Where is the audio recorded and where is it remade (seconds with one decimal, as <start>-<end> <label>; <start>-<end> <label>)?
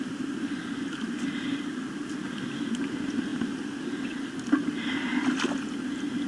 0.0-3.3 recorded; 3.3-4.2 remade; 4.2-6.3 recorded